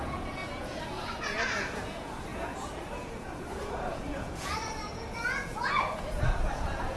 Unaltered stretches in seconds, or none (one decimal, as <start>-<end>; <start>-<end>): none